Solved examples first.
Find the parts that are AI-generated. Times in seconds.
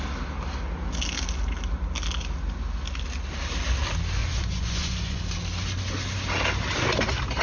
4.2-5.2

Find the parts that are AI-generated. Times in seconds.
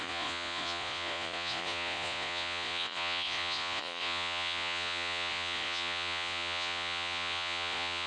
0.0-8.1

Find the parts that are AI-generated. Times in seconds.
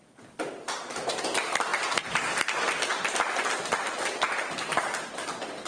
none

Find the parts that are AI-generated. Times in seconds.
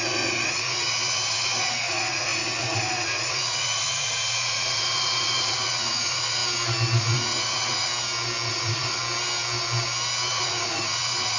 0.0-6.4; 7.0-7.9; 8.5-9.0; 10.3-11.4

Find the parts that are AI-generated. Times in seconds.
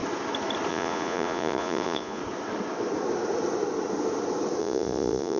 0.7-2.2; 4.6-5.4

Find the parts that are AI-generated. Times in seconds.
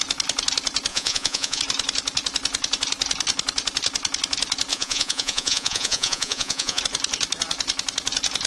0.9-1.6; 4.7-6.8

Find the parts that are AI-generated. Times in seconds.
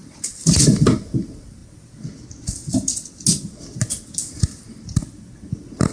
none